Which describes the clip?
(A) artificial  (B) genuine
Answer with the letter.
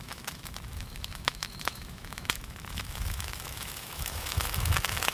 A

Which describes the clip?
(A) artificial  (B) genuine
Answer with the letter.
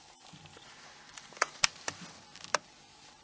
B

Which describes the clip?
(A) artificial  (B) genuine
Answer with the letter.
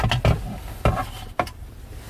B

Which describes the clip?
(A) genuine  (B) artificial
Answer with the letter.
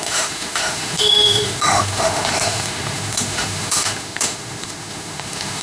B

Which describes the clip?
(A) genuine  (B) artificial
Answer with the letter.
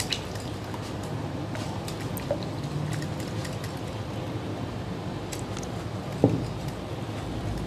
A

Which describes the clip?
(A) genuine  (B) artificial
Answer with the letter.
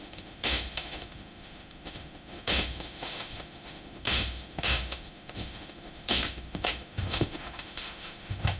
B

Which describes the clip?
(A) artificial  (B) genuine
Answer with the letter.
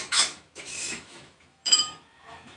A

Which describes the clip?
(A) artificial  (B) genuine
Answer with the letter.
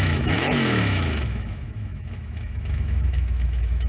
A